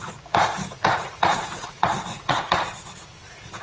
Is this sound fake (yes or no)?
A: yes